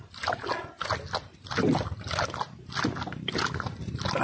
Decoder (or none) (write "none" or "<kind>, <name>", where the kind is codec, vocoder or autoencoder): none